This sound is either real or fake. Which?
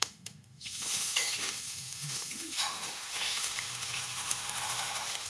fake